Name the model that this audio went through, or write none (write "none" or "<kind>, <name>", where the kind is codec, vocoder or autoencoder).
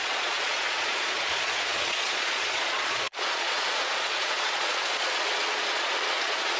vocoder, Vocos